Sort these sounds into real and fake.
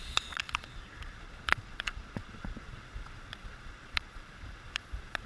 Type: fake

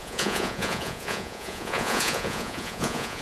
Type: fake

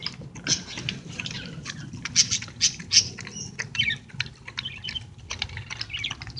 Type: real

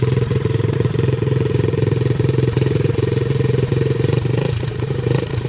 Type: fake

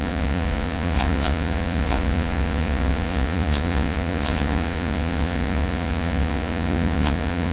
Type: fake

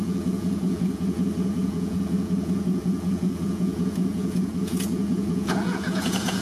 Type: fake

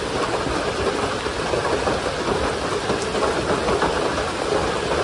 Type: real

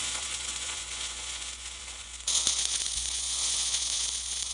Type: fake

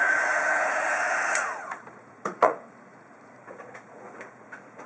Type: fake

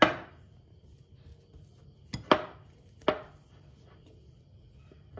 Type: real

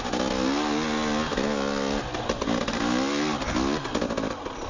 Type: real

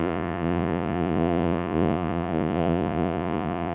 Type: fake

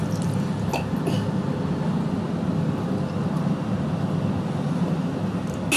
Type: real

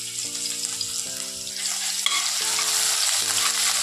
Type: real